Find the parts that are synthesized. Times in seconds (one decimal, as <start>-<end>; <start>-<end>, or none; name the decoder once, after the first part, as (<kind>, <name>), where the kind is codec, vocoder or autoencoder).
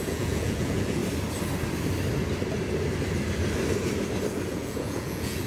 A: 0.0-1.0 (vocoder, Vocos); 4.3-5.5